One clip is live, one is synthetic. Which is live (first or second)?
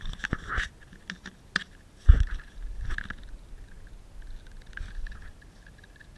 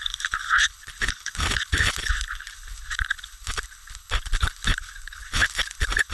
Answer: first